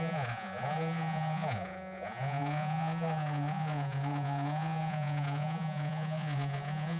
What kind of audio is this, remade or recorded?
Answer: remade